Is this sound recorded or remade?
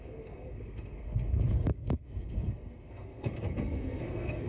remade